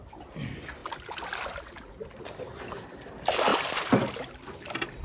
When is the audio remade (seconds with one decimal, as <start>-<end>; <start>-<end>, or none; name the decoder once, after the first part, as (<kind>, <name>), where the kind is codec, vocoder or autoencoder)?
none